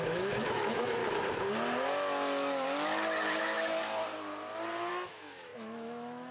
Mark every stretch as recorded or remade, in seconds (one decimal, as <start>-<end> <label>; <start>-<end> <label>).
0.0-1.0 remade; 1.0-3.4 recorded; 3.4-3.8 remade; 3.8-4.9 recorded; 4.9-6.3 remade